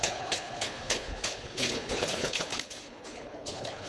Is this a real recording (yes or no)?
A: no